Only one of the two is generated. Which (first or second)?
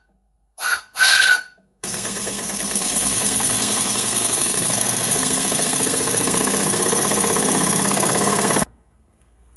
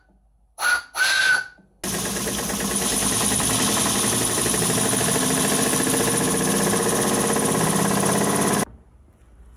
first